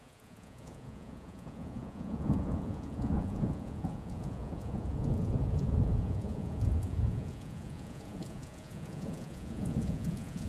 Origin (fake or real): fake